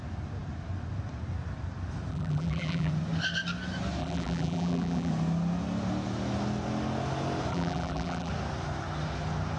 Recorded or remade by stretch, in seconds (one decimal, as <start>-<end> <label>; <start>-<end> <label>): 0.0-2.1 recorded; 2.1-2.9 remade; 2.9-4.0 recorded; 4.0-5.1 remade; 5.1-7.5 recorded; 7.5-8.3 remade; 8.3-9.6 recorded